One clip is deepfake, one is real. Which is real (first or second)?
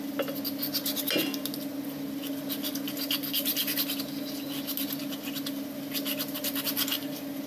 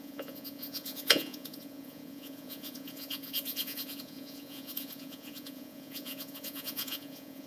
first